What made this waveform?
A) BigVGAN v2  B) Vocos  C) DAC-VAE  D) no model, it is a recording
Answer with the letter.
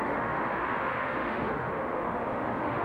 C